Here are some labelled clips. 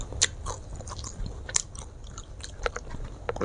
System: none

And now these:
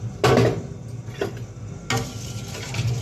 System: none